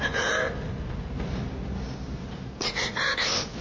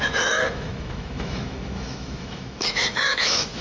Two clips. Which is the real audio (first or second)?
first